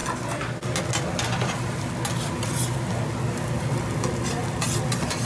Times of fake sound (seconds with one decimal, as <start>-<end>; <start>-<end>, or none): none